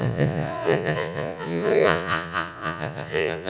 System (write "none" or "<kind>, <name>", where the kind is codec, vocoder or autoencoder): vocoder, Vocos